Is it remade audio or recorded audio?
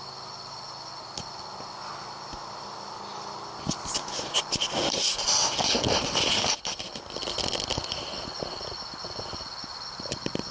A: recorded